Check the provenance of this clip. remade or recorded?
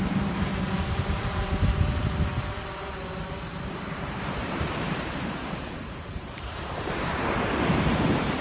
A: remade